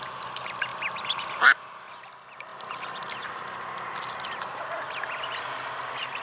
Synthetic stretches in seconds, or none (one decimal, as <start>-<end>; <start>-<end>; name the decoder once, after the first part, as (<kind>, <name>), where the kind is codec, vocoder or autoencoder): 0.0-0.7 (vocoder, BigVGAN v2); 1.3-2.5; 4.4-6.2